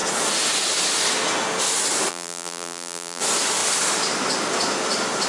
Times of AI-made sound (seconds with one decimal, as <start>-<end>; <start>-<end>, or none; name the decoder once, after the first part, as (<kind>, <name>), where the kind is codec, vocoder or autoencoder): 2.1-3.2 (vocoder, BigVGAN v2)